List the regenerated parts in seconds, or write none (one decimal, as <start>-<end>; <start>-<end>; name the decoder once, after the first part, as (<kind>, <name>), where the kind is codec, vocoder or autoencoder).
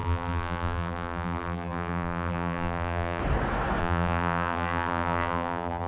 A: 0.0-3.2 (vocoder, BigVGAN v2); 3.8-5.9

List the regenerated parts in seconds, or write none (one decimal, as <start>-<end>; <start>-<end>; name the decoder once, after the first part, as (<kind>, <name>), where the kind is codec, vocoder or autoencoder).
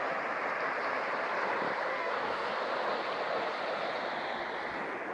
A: 1.9-2.5 (codec, DAC)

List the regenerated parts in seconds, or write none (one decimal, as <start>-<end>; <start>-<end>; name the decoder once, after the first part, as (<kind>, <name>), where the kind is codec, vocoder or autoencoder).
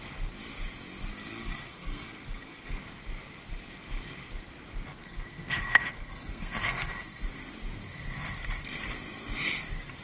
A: 1.1-2.8 (codec, SNAC); 5.0-7.2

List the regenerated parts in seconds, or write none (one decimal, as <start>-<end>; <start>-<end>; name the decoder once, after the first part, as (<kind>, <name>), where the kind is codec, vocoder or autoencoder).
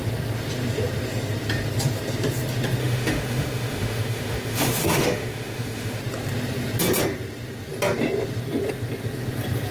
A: 2.8-6.0 (autoencoder, DAC-VAE)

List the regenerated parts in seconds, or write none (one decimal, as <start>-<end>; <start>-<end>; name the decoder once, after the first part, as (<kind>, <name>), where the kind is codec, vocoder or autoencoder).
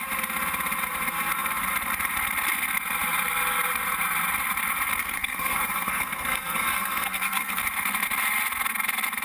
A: 5.0-7.6 (codec, SNAC)